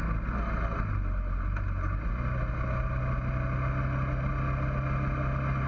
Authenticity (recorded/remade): recorded